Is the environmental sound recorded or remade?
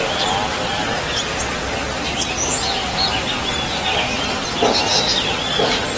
recorded